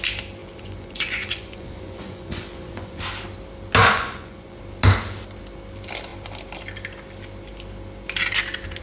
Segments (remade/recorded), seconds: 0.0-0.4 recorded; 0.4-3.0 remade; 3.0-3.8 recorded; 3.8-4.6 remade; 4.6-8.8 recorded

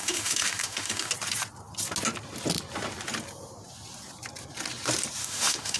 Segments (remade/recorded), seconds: 0.0-1.1 remade; 1.1-5.2 recorded; 5.2-5.8 remade

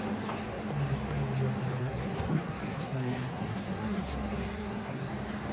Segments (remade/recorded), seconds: 0.0-1.8 recorded; 1.8-5.1 remade; 5.1-5.5 recorded